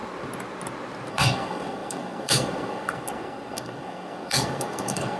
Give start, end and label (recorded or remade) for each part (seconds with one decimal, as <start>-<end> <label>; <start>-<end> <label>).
0.0-1.1 recorded; 1.1-5.2 remade